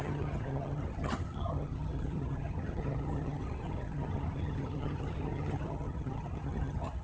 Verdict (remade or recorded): remade